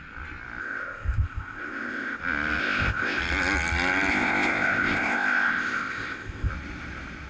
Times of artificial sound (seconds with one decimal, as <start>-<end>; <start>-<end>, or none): 0.6-2.2; 2.6-3.2; 4.1-6.5